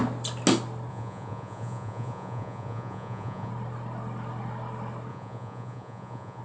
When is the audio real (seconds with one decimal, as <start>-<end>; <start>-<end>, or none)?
0.0-0.9; 3.5-5.1